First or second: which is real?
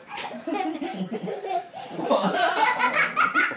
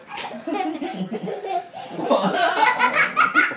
second